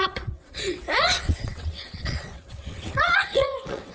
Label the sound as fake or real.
fake